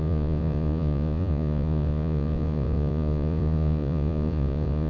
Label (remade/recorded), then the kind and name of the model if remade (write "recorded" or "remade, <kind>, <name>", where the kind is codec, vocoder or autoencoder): remade, vocoder, Vocos